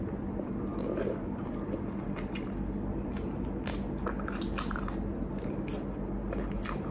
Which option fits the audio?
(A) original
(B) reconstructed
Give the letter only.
A